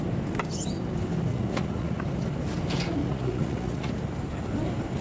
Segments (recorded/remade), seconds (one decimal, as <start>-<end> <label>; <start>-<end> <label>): 0.0-1.3 recorded; 1.3-2.0 remade; 2.0-3.0 recorded; 3.0-3.9 remade; 3.9-5.0 recorded